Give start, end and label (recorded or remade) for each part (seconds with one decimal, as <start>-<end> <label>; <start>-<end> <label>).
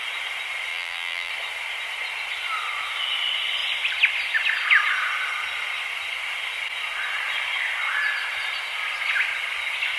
0.0-0.7 recorded; 0.7-1.3 remade; 1.3-10.0 recorded